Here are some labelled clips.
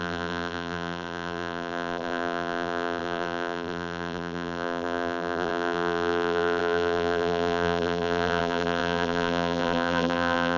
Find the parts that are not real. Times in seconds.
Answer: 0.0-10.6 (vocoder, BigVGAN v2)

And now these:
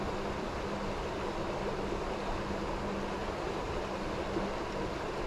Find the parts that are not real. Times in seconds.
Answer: none

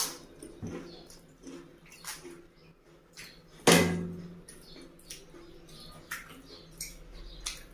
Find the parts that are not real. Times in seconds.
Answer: none

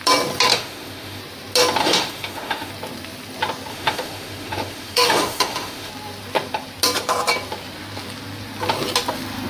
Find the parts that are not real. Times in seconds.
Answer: 0.5-1.2 (autoencoder, DAC-VAE); 1.8-2.7; 3.7-5.9

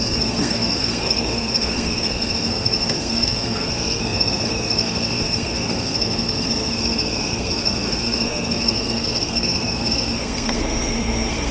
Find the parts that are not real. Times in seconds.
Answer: 0.0-11.5 (codec, SNAC)

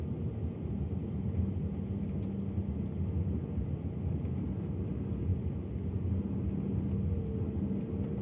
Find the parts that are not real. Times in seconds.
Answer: none

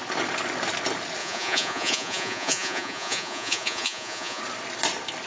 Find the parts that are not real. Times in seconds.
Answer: 1.2-4.4 (vocoder, Vocos)

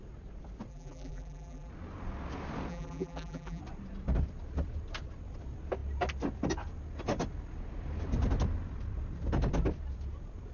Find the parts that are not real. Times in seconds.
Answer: 0.7-1.7 (vocoder, BigVGAN v2); 2.7-3.6